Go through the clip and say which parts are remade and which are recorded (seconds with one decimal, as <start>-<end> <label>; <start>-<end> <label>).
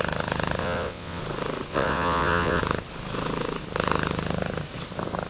0.0-0.6 recorded; 0.6-1.2 remade; 1.2-1.7 recorded; 1.7-2.6 remade; 2.6-5.3 recorded